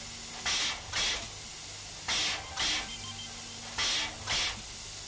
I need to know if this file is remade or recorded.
recorded